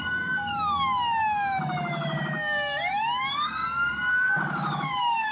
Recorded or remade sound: remade